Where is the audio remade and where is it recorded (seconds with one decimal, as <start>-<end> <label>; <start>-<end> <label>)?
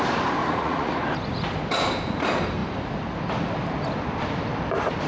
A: 0.0-0.4 recorded; 0.4-0.9 remade; 0.9-5.1 recorded